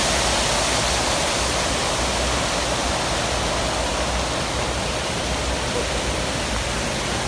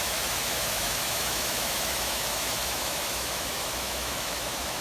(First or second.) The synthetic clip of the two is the second